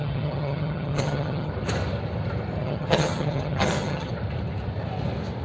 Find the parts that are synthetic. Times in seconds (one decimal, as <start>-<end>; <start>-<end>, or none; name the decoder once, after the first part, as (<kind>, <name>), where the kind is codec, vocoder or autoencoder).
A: 0.0-1.5 (vocoder, HiFi-GAN); 2.6-4.1